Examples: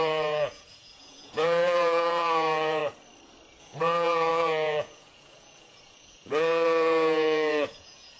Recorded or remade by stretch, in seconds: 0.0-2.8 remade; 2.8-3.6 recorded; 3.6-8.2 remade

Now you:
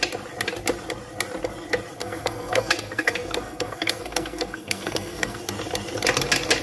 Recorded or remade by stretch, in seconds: 0.0-2.0 recorded; 2.0-5.4 remade; 5.4-6.6 recorded